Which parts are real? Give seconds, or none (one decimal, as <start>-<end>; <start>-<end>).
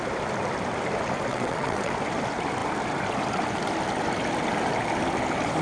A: 0.0-1.3; 1.9-5.6